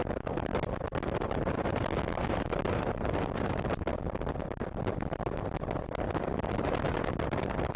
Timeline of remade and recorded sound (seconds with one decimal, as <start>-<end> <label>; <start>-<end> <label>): 0.0-3.9 remade; 3.9-6.5 recorded; 6.5-7.8 remade